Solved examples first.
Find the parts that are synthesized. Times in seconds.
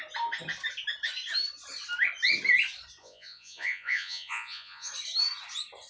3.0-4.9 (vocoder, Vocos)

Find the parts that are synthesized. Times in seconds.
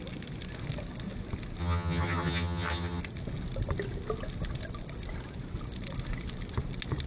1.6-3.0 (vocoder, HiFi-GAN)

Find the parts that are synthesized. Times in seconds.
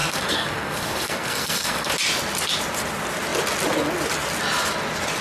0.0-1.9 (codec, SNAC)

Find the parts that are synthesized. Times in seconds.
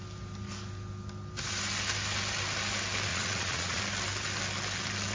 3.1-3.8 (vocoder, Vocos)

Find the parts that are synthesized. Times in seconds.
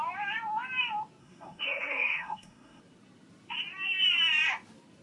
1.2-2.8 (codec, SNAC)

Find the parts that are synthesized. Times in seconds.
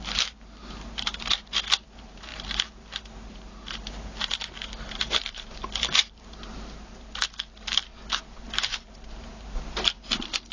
0.0-10.5 (vocoder, BigVGAN v2)